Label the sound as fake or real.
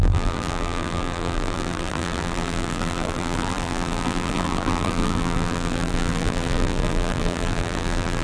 fake